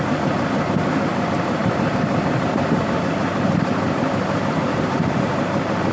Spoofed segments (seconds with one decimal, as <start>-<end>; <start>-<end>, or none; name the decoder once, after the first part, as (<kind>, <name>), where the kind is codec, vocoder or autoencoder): 0.0-5.9 (vocoder, BigVGAN v2)